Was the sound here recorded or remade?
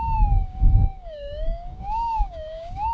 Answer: remade